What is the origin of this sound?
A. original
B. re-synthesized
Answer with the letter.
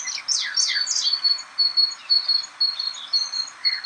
A